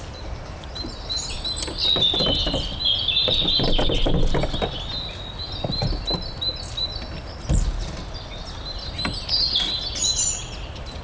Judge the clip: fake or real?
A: real